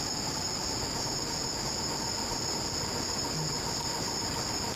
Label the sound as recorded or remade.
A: recorded